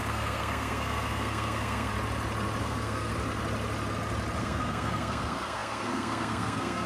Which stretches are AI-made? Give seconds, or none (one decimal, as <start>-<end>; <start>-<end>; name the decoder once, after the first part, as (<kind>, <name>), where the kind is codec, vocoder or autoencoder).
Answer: 0.0-1.9 (codec, SNAC); 2.6-3.1; 4.4-6.9